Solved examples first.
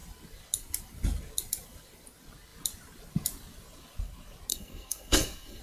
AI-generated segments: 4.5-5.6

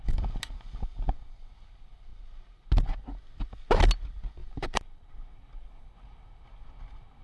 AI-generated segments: 2.1-2.7; 4.4-5.4

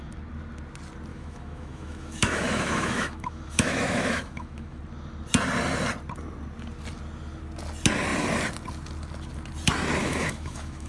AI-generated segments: 1.1-4.8; 10.0-10.9

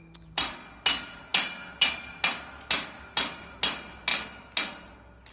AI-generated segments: none

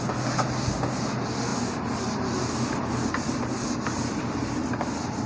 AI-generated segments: none

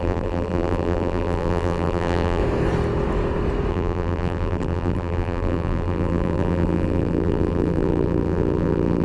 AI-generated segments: 0.0-2.4; 3.7-9.0

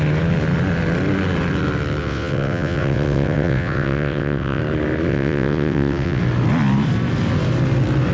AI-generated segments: 2.0-4.6; 5.1-6.2